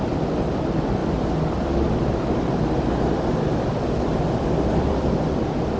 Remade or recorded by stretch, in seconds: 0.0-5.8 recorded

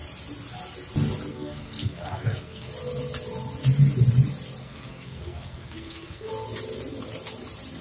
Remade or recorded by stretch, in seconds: 0.0-1.3 recorded; 1.3-2.7 remade; 2.7-4.6 recorded; 4.6-6.3 remade; 6.3-7.8 recorded

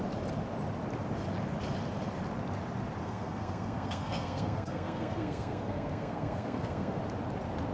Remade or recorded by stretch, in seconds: 0.0-3.0 recorded; 3.0-7.0 remade; 7.0-7.7 recorded